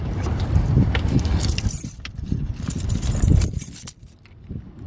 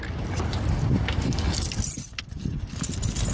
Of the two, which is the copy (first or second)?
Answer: first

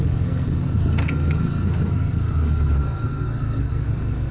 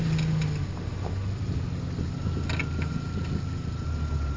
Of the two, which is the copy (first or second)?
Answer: first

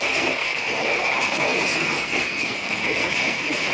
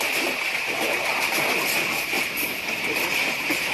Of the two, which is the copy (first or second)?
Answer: first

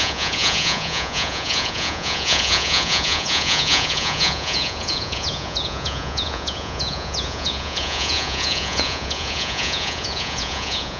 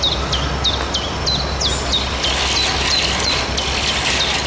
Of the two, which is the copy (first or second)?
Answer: first